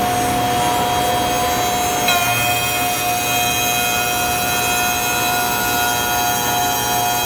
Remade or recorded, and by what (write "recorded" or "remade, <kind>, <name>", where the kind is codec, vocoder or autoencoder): recorded